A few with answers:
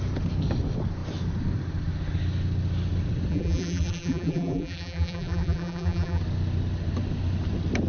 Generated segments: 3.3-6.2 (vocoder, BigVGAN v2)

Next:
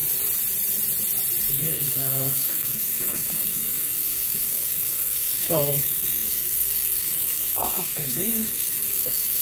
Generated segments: 1.5-9.4 (codec, SNAC)

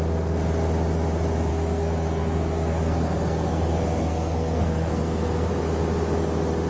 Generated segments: 1.5-5.5 (codec, SNAC)

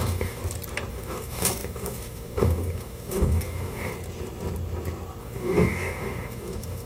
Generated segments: 0.0-0.4 (codec, DAC); 0.9-3.9; 5.2-6.9

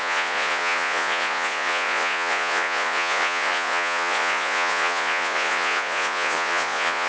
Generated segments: 0.0-7.1 (vocoder, Vocos)

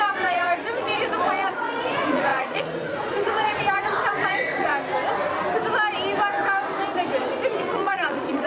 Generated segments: 0.0-4.7 (vocoder, Vocos); 7.6-8.5